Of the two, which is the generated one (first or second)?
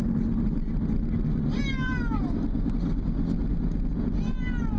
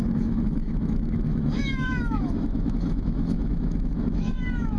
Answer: second